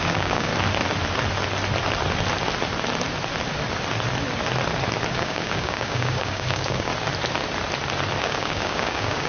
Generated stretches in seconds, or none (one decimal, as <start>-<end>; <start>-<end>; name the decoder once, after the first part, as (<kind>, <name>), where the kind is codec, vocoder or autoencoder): 0.0-0.5 (codec, DAC); 5.1-6.9; 8.2-9.3